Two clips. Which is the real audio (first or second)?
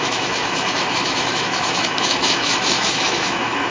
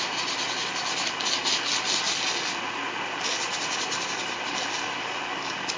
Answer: second